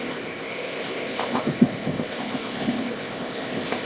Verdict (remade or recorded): remade